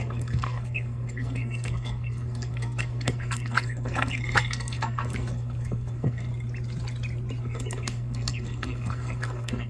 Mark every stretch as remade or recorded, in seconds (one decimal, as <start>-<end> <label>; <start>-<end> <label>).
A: 0.0-6.3 remade; 6.3-7.4 recorded; 7.4-9.7 remade